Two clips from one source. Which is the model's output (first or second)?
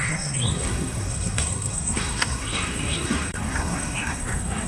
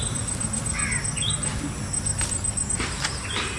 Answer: first